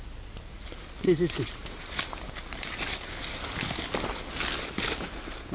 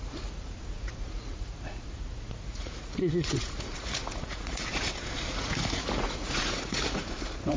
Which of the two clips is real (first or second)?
first